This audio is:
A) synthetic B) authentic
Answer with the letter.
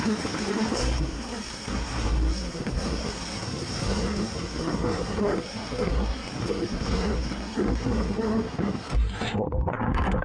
A